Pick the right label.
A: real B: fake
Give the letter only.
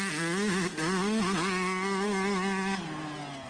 A